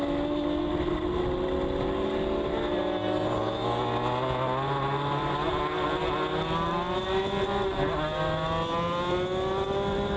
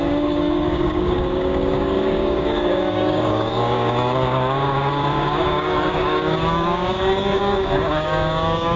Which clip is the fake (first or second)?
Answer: second